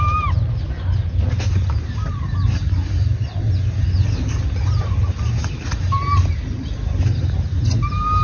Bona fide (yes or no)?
yes